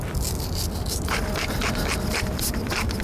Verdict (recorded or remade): recorded